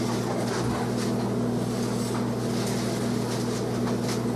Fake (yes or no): no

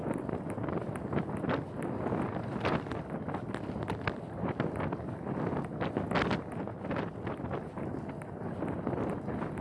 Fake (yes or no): no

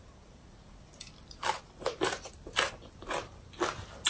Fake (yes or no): no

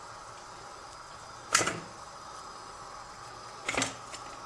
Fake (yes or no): no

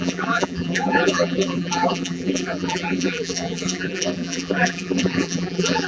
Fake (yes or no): yes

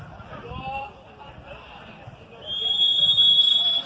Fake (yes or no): yes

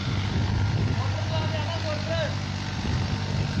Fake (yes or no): no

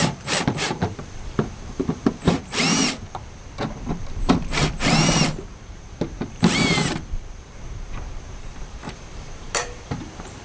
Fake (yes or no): yes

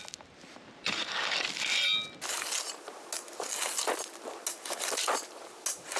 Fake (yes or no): no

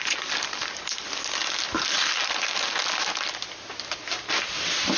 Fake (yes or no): no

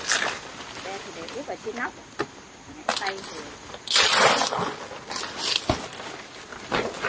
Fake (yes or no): no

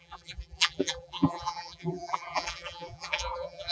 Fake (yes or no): yes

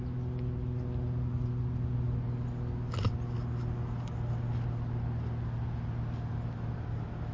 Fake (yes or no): no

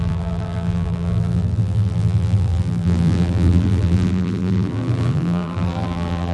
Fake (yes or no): yes